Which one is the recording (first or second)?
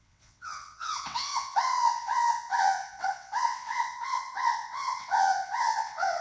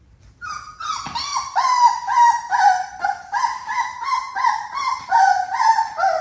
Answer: second